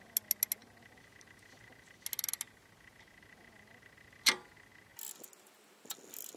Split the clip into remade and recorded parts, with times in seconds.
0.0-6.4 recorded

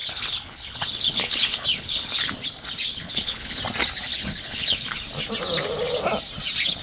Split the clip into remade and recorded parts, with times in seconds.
0.0-2.3 remade; 2.3-2.9 recorded; 2.9-3.6 remade; 3.6-4.1 recorded; 4.1-5.0 remade; 5.0-6.8 recorded

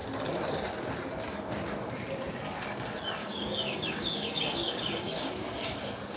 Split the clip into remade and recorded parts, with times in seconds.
0.0-3.2 recorded; 3.2-5.3 remade; 5.3-6.2 recorded

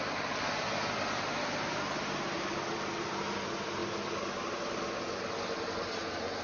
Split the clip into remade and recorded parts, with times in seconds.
0.0-6.4 recorded

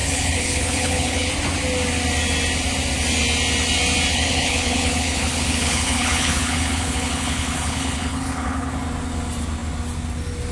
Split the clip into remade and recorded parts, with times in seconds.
0.0-1.3 remade; 1.3-4.1 recorded; 4.1-8.7 remade; 8.7-10.5 recorded

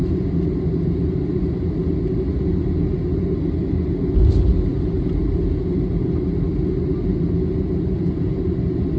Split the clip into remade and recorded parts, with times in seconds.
0.0-9.0 recorded

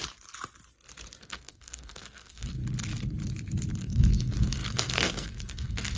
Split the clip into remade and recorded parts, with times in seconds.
0.0-1.2 recorded; 1.2-2.6 remade; 2.6-3.8 recorded; 3.8-6.0 remade

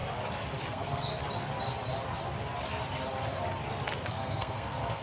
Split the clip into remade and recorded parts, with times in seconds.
0.0-0.6 recorded; 0.6-1.1 remade; 1.1-4.1 recorded; 4.1-5.0 remade